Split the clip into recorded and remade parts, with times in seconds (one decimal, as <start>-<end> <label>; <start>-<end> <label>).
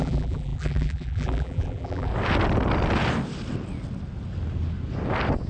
0.0-2.1 remade; 2.1-5.5 recorded